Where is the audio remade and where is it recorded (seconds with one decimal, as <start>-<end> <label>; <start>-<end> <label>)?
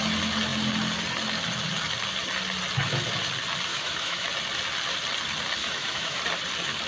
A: 0.0-3.7 recorded; 3.7-4.3 remade; 4.3-5.6 recorded; 5.6-6.2 remade; 6.2-6.9 recorded